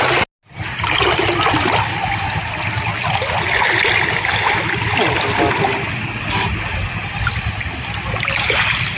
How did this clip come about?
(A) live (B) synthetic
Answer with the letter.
A